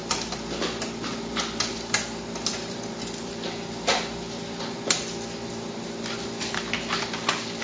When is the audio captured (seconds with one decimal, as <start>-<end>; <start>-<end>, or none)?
0.0-7.6